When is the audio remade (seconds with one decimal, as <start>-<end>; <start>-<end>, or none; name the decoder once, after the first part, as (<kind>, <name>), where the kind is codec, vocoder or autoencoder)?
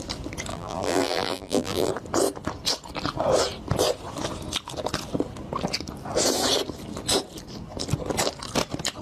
0.5-1.9 (vocoder, BigVGAN v2)